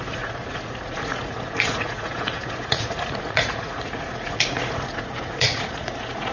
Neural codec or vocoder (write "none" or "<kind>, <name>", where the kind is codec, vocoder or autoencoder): vocoder, Vocos